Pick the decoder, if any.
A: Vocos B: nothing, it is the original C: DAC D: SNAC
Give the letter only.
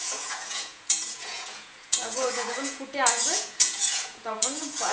A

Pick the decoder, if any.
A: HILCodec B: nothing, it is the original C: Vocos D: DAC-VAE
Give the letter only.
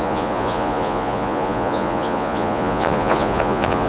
C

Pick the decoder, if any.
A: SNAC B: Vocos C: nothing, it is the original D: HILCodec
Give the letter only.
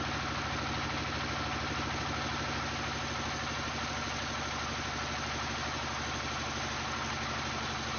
C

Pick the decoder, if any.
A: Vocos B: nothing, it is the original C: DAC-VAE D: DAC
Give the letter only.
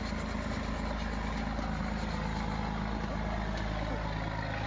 B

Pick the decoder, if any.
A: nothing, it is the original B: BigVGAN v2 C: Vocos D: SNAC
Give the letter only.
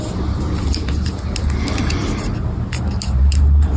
A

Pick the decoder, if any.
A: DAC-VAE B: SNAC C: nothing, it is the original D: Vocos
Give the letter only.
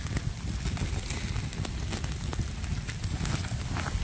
C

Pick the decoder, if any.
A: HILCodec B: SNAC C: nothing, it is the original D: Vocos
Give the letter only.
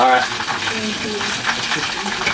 C